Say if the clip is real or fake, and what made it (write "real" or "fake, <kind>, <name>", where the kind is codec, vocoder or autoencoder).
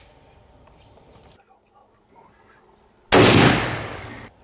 real